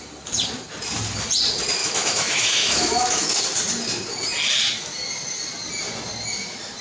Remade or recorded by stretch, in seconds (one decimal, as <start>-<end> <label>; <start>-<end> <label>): 0.0-1.8 recorded; 1.8-3.4 remade; 3.4-6.8 recorded